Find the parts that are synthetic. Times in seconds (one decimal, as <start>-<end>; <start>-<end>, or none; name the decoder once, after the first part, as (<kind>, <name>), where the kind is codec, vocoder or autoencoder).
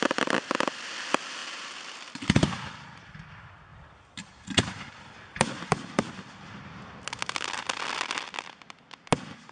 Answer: 1.4-3.2 (vocoder, BigVGAN v2); 3.7-6.6